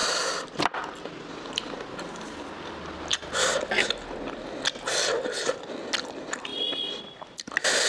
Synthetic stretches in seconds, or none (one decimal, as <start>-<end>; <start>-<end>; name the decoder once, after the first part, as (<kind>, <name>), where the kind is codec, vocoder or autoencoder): 0.0-1.5 (vocoder, BigVGAN v2); 6.5-7.0